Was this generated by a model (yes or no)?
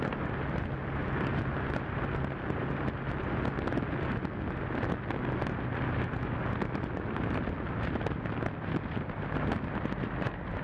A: no